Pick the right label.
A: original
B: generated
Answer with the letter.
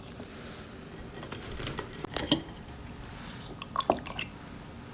A